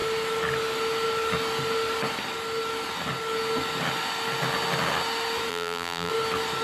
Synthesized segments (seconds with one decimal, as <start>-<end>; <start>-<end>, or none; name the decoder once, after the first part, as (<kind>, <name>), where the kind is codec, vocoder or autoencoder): 5.5-6.1 (vocoder, BigVGAN v2)